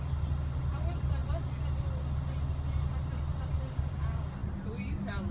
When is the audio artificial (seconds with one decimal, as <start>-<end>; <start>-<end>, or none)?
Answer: none